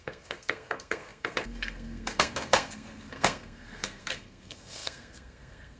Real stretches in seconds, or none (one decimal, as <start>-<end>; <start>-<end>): none